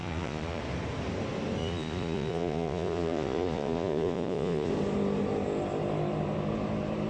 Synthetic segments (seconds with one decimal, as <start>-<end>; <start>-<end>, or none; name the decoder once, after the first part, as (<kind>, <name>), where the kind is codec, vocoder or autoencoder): 0.0-0.6 (vocoder, Vocos); 1.6-4.7